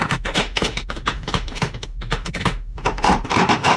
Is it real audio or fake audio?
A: fake